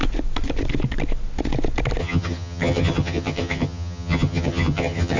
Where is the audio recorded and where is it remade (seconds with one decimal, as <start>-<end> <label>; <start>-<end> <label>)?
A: 0.0-2.0 recorded; 2.0-5.2 remade